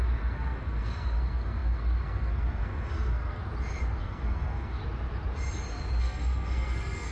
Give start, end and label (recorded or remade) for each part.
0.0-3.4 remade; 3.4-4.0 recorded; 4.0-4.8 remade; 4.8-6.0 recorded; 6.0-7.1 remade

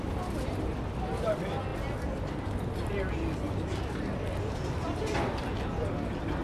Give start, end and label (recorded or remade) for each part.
0.0-6.4 recorded

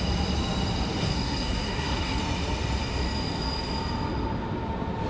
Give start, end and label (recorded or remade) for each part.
0.0-1.0 recorded; 1.0-2.2 remade; 2.2-5.1 recorded

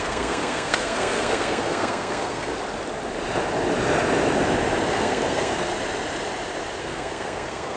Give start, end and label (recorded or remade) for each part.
0.0-2.5 remade; 2.5-4.9 recorded; 4.9-5.7 remade; 5.7-6.8 recorded; 6.8-7.8 remade

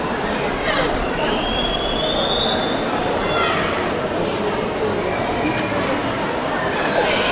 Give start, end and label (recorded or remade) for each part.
0.0-7.3 recorded